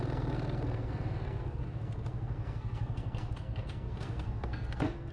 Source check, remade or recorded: remade